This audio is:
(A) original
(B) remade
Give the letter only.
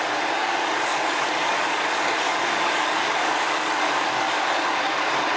B